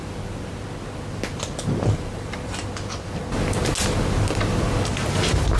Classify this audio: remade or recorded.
recorded